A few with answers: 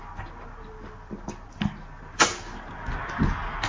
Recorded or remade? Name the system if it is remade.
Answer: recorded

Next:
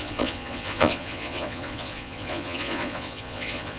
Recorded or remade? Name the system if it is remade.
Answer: remade, vocoder, Vocos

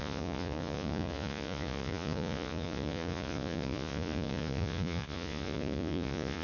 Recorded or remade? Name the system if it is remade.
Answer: remade, vocoder, Vocos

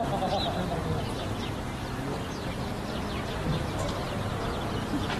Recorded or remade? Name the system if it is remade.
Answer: recorded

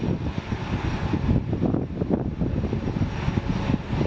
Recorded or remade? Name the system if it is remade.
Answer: recorded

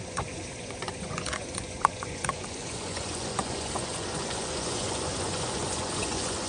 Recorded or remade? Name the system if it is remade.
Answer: remade, vocoder, Vocos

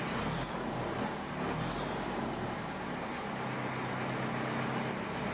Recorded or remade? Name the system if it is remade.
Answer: recorded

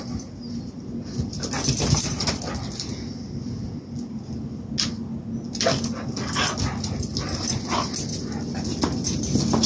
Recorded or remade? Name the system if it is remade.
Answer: recorded